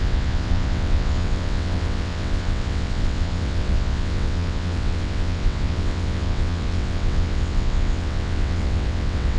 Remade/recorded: remade